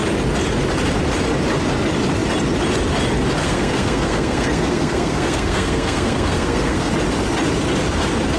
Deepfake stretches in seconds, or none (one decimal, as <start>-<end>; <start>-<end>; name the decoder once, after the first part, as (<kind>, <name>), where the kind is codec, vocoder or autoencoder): 3.4-6.9 (codec, SNAC)